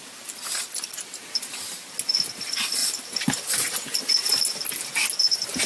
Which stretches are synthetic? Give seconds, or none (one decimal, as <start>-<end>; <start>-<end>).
2.8-3.8